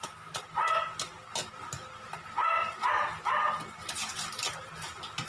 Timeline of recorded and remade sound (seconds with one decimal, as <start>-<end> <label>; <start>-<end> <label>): 0.0-5.3 recorded